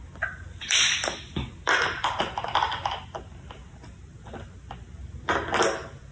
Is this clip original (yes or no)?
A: yes